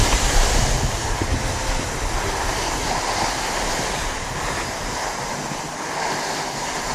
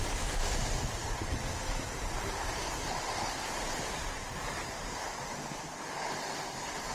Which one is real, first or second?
first